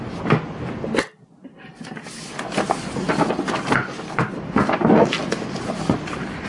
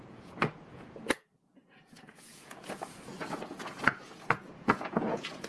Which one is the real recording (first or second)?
first